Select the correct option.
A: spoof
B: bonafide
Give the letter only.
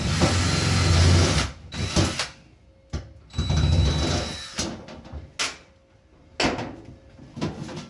B